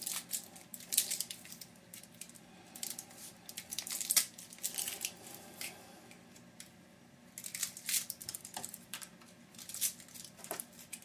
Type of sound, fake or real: real